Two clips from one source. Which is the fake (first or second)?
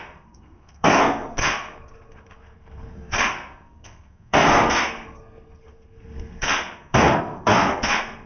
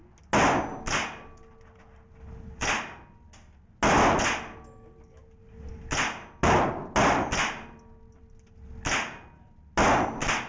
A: first